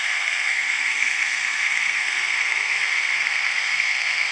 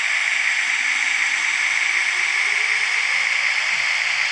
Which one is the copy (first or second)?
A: first